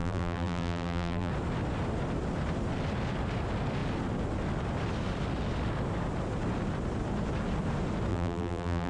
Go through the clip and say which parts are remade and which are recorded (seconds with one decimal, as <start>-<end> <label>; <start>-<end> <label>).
0.0-1.3 remade; 1.3-8.1 recorded; 8.1-8.9 remade